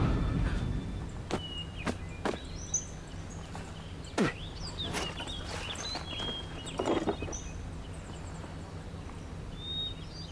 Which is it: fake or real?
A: real